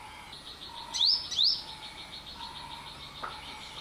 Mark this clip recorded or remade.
recorded